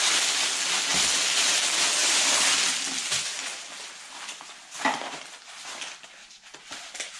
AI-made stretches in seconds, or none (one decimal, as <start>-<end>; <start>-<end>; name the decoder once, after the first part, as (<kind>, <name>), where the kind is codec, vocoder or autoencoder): none